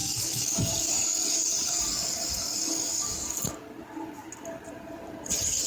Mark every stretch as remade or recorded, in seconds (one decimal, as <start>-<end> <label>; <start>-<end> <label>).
0.0-3.4 remade; 3.4-5.7 recorded